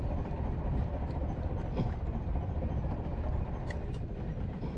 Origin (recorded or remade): remade